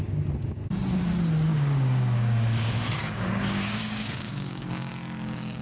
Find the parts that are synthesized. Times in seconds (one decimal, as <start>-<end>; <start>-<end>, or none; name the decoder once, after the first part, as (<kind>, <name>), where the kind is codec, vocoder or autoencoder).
1.5-4.9 (codec, DAC)